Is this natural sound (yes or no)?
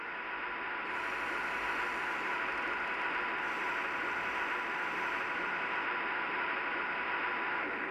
yes